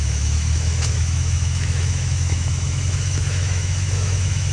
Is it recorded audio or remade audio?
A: remade